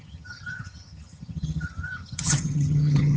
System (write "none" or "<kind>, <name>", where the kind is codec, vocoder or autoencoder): vocoder, HiFi-GAN